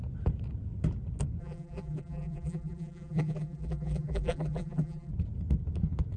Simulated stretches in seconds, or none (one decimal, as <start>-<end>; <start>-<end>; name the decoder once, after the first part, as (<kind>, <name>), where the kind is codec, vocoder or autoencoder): 1.4-5.1 (vocoder, BigVGAN v2)